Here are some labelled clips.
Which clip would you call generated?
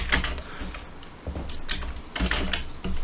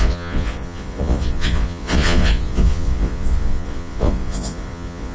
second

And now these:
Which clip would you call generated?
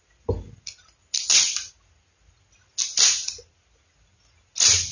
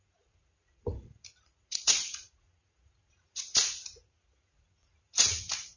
second